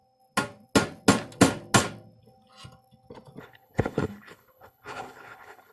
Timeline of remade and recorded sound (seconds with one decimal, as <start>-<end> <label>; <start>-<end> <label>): 0.0-3.4 recorded; 3.4-5.7 remade